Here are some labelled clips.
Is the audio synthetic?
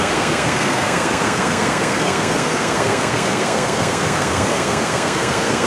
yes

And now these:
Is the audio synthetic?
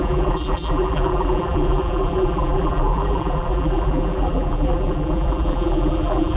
yes